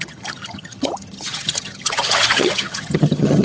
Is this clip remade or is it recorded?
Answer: remade